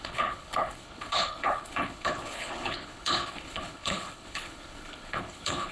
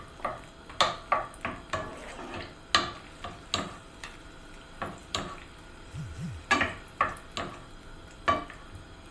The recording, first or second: second